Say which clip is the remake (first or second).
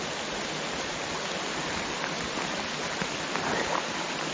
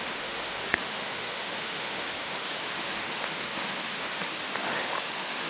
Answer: second